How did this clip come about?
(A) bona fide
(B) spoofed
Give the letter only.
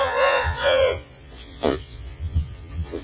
B